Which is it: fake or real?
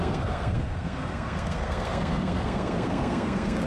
fake